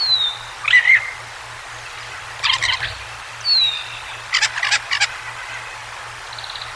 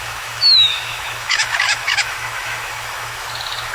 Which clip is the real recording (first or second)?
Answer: first